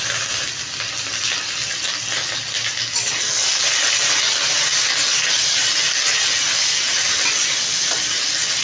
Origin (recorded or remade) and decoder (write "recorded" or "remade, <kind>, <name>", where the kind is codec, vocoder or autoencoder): recorded